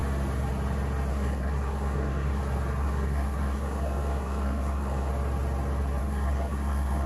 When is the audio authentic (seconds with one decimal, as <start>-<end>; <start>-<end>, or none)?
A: 0.0-1.1; 2.4-2.8; 5.1-6.0